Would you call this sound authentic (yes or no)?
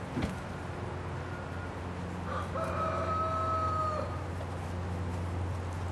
yes